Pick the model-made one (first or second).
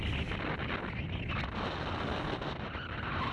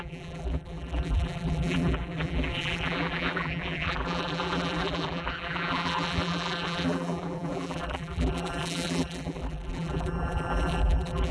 second